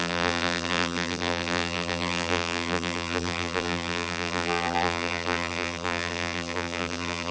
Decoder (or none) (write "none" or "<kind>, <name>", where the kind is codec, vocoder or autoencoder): vocoder, BigVGAN v2